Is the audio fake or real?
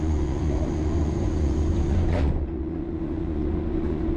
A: fake